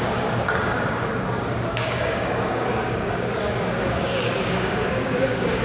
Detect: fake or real fake